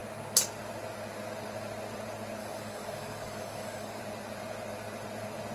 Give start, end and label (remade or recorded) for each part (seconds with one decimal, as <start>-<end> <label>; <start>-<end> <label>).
0.0-2.4 recorded; 2.4-4.0 remade; 4.0-5.5 recorded